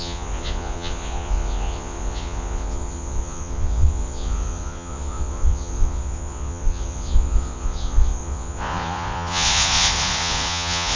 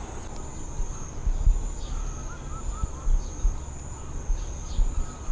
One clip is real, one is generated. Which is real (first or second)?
second